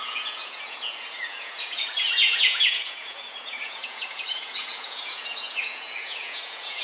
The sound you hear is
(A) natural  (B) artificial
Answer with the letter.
B